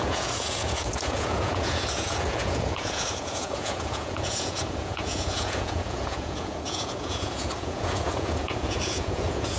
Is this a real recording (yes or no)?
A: no